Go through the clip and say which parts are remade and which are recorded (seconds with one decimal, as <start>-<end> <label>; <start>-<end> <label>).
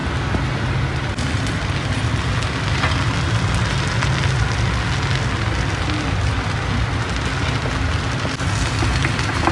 0.0-9.5 recorded